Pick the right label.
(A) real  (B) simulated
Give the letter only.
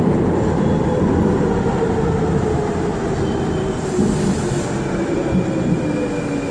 A